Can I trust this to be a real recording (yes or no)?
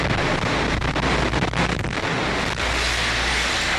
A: yes